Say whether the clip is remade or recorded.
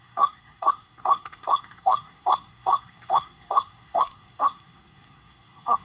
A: remade